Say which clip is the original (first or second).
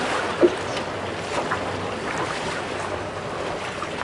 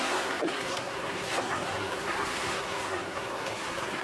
first